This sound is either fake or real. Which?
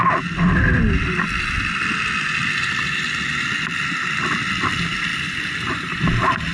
real